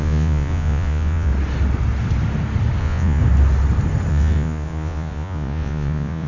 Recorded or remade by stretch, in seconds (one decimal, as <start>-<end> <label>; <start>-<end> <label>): 0.0-1.3 remade; 1.3-2.8 recorded; 2.8-3.2 remade; 3.2-4.1 recorded; 4.1-6.3 remade

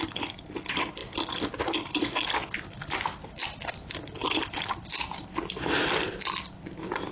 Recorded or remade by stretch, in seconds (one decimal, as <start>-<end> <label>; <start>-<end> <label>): 0.0-7.1 recorded

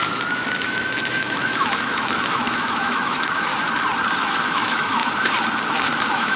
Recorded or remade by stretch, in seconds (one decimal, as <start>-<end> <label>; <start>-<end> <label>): 0.0-3.5 remade; 3.5-4.2 recorded; 4.2-5.0 remade; 5.0-5.7 recorded; 5.7-6.4 remade